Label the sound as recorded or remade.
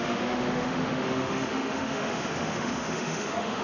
remade